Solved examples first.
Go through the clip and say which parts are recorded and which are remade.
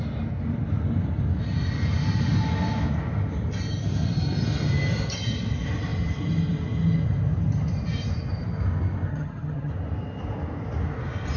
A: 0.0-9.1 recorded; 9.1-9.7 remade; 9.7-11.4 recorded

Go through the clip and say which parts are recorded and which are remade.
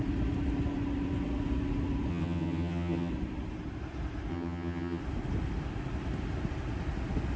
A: 0.0-2.1 recorded; 2.1-3.1 remade; 3.1-4.3 recorded; 4.3-5.0 remade; 5.0-7.4 recorded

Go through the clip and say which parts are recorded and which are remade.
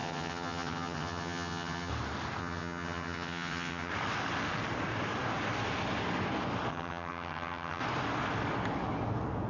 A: 0.0-1.9 remade; 1.9-2.4 recorded; 2.4-3.9 remade; 3.9-6.7 recorded; 6.7-7.8 remade; 7.8-9.5 recorded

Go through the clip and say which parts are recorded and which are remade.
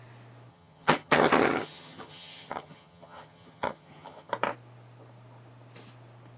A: 0.0-0.5 recorded; 0.5-4.3 remade; 4.3-6.4 recorded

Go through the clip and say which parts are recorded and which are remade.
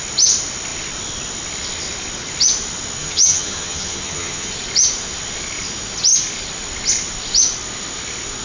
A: 0.0-3.0 recorded; 3.0-4.5 remade; 4.5-8.4 recorded